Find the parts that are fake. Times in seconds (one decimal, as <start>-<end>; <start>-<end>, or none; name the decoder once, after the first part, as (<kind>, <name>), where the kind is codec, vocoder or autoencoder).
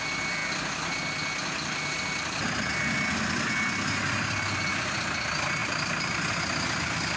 none